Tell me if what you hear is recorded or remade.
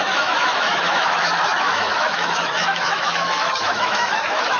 remade